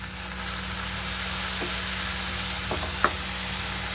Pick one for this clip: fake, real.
real